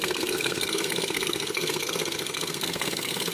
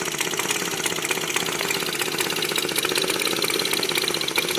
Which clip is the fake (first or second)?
first